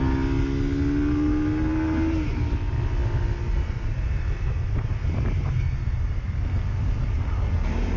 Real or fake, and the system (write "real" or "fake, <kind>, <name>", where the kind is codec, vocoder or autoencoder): real